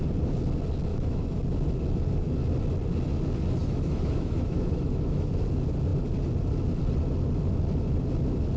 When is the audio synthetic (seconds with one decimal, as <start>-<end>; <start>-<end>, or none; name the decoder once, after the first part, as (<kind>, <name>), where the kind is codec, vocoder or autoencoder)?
0.9-1.4 (autoencoder, DAC-VAE); 3.6-5.3